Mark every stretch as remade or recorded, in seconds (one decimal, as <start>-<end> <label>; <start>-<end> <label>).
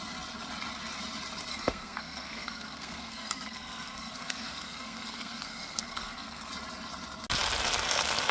0.0-1.5 recorded; 1.5-6.5 remade; 6.5-8.3 recorded